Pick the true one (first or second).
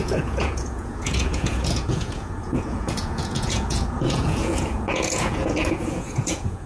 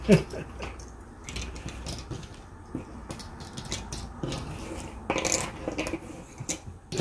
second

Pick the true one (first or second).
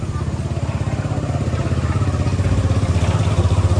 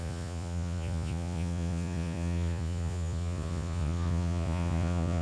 first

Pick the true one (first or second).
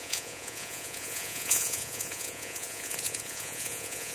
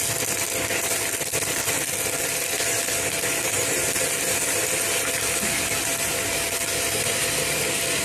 second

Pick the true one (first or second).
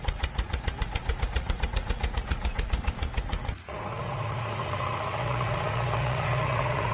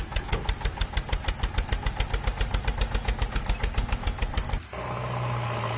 second